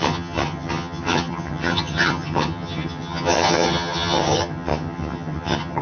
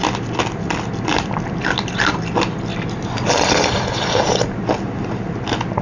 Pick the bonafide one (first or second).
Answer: second